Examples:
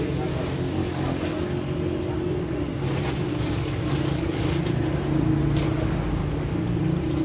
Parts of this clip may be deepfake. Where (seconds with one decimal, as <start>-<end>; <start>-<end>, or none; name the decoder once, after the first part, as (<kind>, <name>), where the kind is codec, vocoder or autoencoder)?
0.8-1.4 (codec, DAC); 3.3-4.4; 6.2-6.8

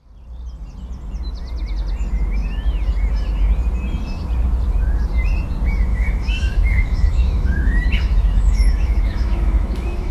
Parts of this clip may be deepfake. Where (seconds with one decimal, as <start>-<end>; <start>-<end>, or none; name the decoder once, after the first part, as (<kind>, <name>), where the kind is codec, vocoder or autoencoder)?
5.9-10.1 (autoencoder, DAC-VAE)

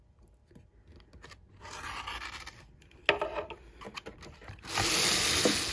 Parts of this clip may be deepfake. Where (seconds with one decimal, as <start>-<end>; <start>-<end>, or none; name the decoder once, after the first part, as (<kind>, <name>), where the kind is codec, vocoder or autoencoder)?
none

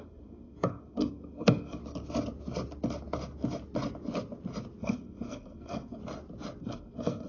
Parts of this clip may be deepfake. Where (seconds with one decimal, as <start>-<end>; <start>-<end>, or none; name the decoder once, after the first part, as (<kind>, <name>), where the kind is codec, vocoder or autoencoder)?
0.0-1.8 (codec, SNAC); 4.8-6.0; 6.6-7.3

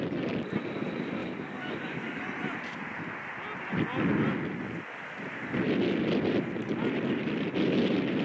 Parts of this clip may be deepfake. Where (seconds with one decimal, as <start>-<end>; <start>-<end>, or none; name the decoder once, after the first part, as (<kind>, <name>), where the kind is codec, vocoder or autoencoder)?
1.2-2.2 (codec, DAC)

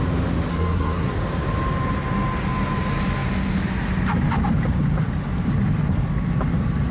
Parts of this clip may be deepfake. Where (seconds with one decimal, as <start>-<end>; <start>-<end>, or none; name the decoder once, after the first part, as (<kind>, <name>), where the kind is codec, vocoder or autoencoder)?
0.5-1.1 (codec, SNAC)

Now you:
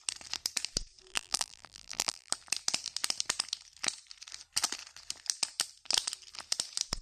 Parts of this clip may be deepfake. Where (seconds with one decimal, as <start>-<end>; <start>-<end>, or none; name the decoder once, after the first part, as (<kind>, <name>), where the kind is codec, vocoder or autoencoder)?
1.1-2.3 (vocoder, BigVGAN v2)